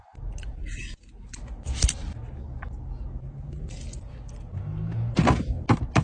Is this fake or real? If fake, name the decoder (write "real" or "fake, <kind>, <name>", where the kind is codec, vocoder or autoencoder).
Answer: real